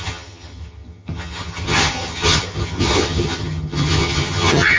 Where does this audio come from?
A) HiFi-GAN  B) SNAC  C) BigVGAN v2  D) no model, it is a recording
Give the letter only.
A